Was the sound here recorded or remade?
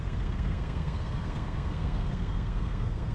remade